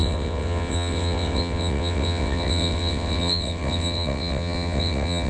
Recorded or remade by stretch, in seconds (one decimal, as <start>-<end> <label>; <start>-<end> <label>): 0.0-5.3 remade